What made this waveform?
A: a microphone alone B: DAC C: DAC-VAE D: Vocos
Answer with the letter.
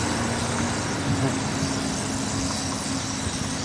A